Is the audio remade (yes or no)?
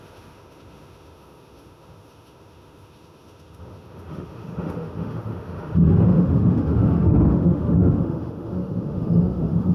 yes